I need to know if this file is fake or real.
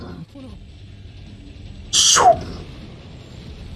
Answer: real